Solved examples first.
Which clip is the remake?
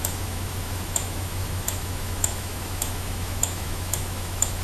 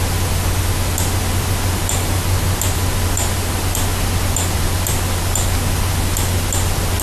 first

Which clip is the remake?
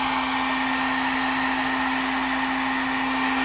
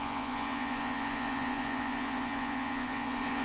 second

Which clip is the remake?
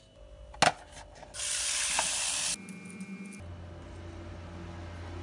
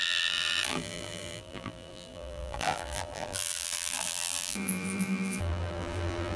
second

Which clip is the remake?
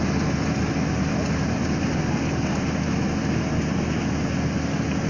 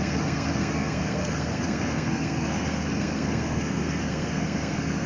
second